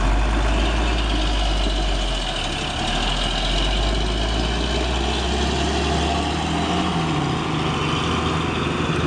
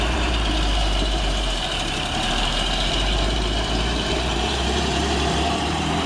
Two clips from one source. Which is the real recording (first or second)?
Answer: first